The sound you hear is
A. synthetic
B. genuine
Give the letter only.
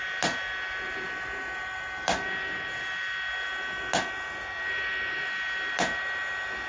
B